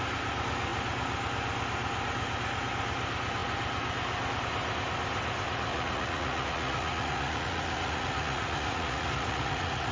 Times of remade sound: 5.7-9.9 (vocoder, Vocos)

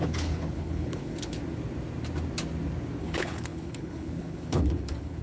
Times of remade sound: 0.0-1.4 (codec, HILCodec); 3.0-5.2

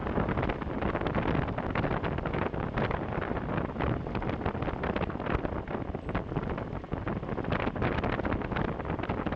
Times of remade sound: none